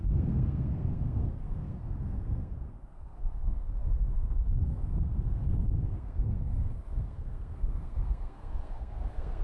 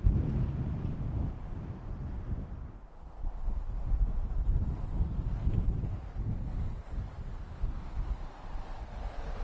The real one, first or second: second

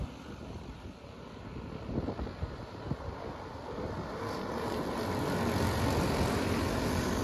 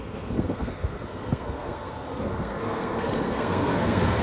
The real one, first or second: first